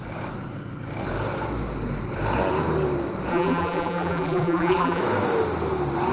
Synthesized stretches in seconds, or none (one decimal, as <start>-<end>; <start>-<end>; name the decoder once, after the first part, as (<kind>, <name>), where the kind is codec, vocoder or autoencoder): 3.3-5.0 (vocoder, BigVGAN v2)

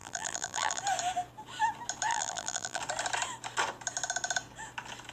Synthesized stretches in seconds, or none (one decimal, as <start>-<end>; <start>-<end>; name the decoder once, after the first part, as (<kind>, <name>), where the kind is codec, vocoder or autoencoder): 0.0-0.8 (vocoder, BigVGAN v2); 2.1-2.8

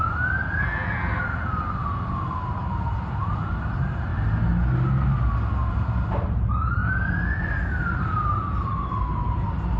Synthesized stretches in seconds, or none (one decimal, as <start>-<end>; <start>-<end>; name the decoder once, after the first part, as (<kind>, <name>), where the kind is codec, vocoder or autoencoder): 0.0-0.4 (vocoder, BigVGAN v2); 2.5-4.1; 5.7-6.8; 7.8-9.8

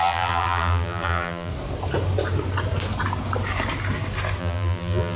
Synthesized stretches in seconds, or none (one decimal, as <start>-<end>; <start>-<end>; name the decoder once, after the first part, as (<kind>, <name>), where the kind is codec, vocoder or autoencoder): 0.0-1.5 (vocoder, BigVGAN v2); 4.4-5.2

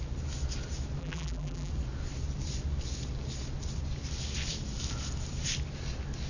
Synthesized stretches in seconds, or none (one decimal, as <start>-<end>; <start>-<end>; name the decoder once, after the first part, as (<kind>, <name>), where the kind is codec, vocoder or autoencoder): 1.0-1.7 (vocoder, BigVGAN v2)

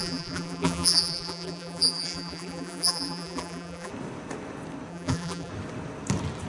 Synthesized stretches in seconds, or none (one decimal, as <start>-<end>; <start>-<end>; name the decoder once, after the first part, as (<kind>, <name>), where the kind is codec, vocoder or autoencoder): 0.0-3.9 (vocoder, BigVGAN v2); 4.9-5.5